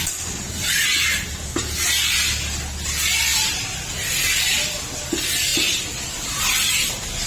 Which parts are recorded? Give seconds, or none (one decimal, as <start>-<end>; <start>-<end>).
0.0-3.3; 3.9-5.5; 6.4-7.3